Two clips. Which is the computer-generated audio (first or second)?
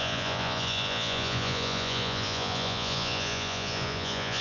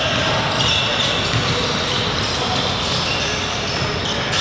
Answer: first